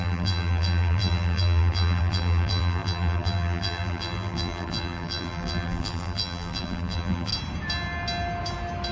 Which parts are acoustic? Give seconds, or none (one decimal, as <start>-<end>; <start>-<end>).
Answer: 7.3-8.9